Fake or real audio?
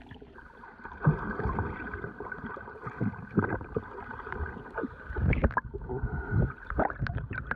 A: fake